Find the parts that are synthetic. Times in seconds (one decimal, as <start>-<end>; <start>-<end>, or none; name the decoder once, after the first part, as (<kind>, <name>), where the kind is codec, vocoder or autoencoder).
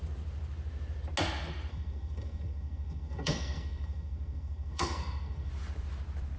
1.7-5.5 (codec, SNAC)